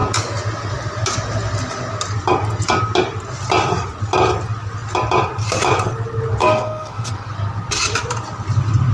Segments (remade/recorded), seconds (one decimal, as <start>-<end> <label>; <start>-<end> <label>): 0.0-6.4 recorded; 6.4-7.1 remade; 7.1-8.9 recorded